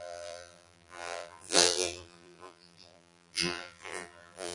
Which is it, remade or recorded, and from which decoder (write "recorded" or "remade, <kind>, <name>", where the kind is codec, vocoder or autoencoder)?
remade, vocoder, BigVGAN v2